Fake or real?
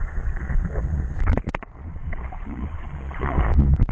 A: fake